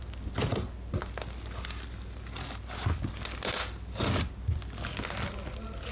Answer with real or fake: real